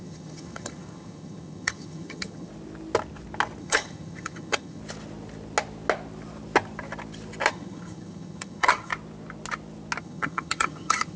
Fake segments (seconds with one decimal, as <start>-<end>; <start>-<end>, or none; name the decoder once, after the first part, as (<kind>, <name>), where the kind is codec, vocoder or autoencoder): 0.0-2.5 (vocoder, HiFi-GAN); 3.6-4.8; 7.5-8.9; 10.0-11.2